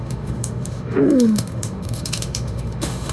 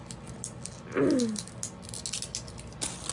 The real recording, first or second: second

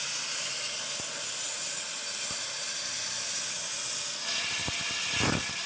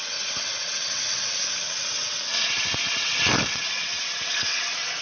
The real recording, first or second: first